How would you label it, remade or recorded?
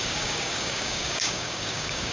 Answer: remade